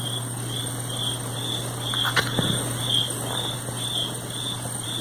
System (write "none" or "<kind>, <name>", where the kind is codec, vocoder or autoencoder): none